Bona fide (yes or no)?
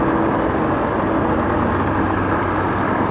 yes